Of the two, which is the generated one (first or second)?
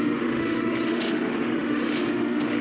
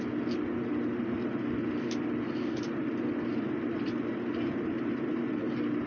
first